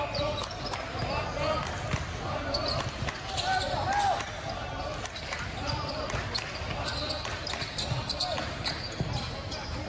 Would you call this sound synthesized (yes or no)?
no